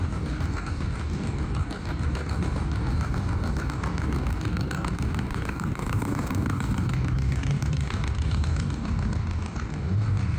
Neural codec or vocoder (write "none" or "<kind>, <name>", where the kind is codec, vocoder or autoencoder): codec, DAC